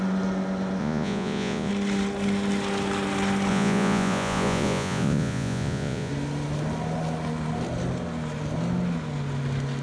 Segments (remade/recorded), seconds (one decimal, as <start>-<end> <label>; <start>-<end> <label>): 0.0-0.8 recorded; 0.8-1.7 remade; 1.7-3.5 recorded; 3.5-6.1 remade; 6.1-9.8 recorded

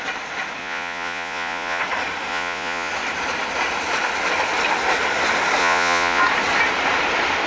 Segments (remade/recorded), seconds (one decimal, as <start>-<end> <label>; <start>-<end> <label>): 0.0-0.6 recorded; 0.6-1.8 remade; 1.8-2.3 recorded; 2.3-2.9 remade; 2.9-5.6 recorded; 5.6-6.2 remade; 6.2-7.5 recorded

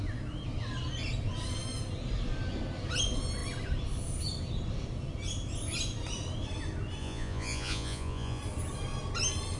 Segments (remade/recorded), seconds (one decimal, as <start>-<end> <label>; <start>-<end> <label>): 0.0-7.0 recorded; 7.0-8.4 remade; 8.4-9.6 recorded

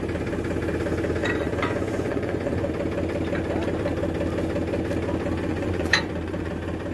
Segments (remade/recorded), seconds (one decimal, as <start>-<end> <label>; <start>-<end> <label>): 0.0-1.2 recorded; 1.2-2.7 remade; 2.7-5.5 recorded; 5.5-6.5 remade; 6.5-6.9 recorded

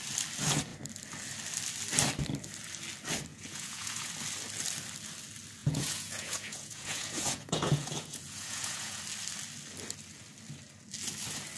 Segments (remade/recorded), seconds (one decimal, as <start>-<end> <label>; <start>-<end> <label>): 0.0-3.3 recorded; 3.3-4.1 remade; 4.1-5.6 recorded; 5.6-9.0 remade; 9.0-11.6 recorded